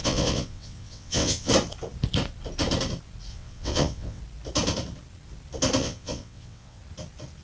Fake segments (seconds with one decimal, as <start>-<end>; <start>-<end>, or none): 0.0-1.5; 3.3-4.2; 5.8-6.8